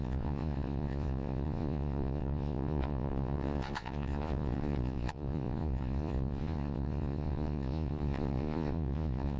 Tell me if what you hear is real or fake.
fake